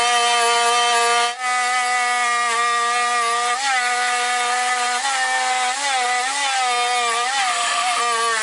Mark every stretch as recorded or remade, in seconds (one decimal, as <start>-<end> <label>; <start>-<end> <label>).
0.0-7.4 recorded; 7.4-8.0 remade; 8.0-8.4 recorded